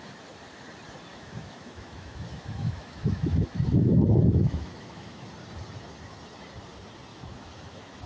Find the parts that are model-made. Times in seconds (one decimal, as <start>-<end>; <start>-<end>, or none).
1.1-5.3; 7.1-8.1